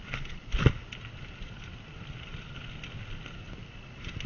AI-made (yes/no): no